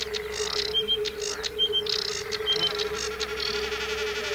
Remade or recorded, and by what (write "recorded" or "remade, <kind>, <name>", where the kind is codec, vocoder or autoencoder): recorded